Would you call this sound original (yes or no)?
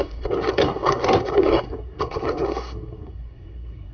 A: no